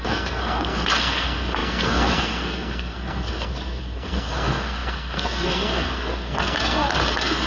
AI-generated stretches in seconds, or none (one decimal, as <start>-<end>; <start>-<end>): 0.0-7.5